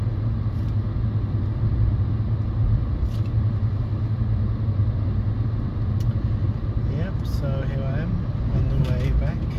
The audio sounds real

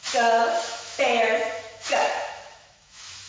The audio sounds fake